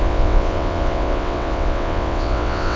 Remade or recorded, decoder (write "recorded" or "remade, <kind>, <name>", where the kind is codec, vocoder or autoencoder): remade, vocoder, WaveNeXt